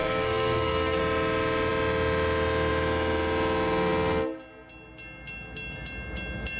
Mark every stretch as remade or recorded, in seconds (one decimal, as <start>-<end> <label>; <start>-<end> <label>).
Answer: 0.0-1.0 remade; 1.0-6.6 recorded